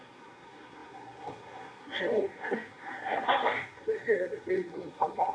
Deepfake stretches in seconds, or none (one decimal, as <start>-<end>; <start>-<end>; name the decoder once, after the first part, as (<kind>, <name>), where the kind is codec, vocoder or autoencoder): 0.0-5.3 (codec, SNAC)